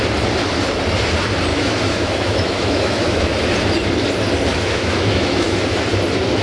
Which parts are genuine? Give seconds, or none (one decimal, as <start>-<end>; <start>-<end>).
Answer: 0.0-1.5; 3.3-4.5; 5.6-6.4